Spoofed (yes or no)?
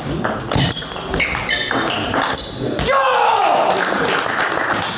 no